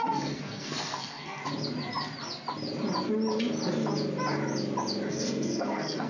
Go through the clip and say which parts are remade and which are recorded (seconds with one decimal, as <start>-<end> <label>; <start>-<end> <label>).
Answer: 0.0-1.4 remade; 1.4-5.1 recorded; 5.1-6.1 remade